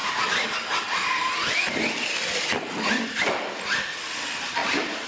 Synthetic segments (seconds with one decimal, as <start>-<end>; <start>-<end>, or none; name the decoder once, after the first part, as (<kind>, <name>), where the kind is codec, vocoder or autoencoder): none